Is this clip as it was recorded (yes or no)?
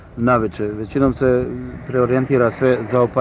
yes